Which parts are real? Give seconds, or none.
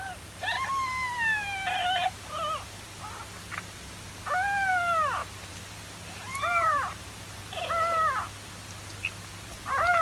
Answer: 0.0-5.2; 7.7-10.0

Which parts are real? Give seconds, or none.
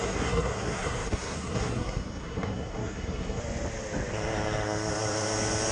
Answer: 3.4-5.7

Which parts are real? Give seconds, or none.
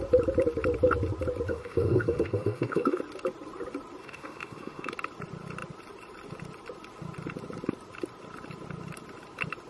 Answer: 0.0-1.5; 3.0-4.0; 4.9-9.7